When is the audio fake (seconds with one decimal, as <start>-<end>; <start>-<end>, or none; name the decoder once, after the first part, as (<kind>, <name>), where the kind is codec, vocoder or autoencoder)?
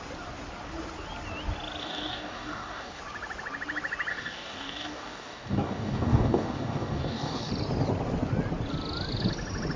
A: 1.8-3.0 (codec, DAC); 4.1-7.5